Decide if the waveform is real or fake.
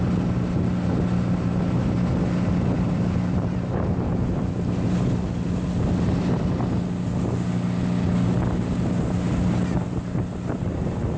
real